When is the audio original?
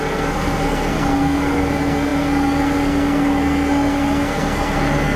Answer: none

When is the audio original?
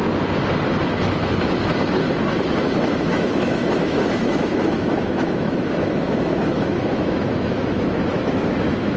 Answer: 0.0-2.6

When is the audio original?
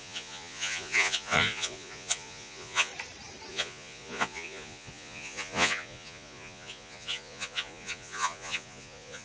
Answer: 2.9-3.5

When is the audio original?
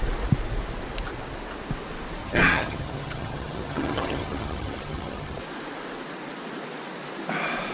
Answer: 0.0-2.2; 5.4-7.7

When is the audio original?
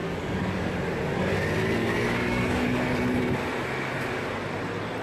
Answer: 0.7-1.8; 3.0-5.0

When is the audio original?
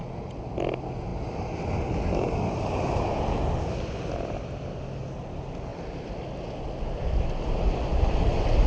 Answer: 0.0-8.7